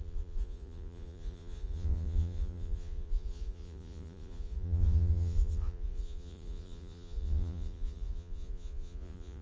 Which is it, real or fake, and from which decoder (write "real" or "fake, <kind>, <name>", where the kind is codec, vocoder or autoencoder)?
fake, vocoder, Vocos